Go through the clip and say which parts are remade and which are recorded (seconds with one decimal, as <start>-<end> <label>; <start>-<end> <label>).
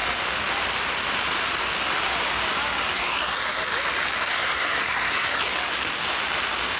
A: 0.0-4.2 recorded; 4.2-5.4 remade; 5.4-6.8 recorded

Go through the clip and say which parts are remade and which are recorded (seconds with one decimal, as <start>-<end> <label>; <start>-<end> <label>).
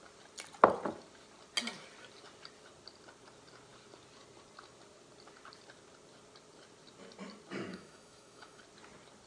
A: 0.0-7.7 recorded; 7.7-8.6 remade; 8.6-9.3 recorded